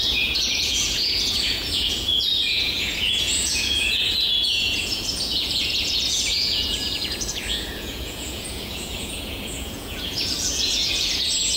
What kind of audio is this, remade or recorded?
remade